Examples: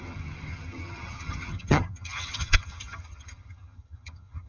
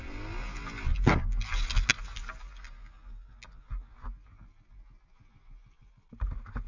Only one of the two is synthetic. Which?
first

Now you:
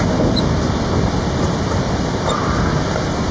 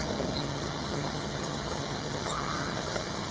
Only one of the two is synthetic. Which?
second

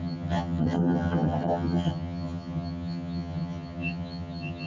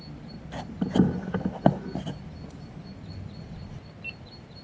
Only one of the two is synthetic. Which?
first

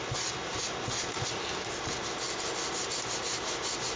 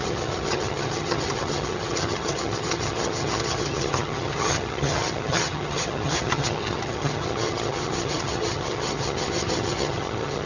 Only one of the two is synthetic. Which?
second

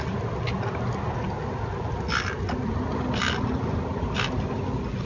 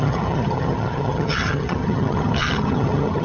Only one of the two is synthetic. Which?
second